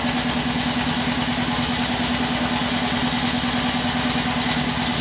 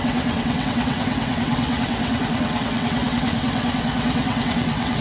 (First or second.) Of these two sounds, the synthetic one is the second